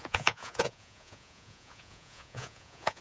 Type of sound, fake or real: fake